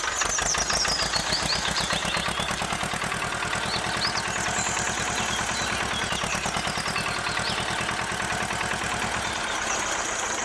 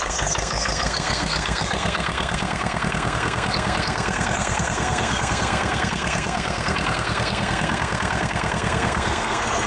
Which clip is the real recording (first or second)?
first